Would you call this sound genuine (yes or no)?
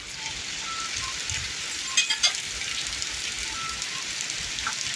yes